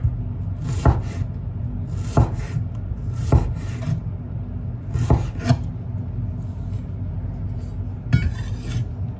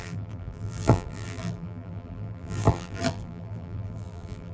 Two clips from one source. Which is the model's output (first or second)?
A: second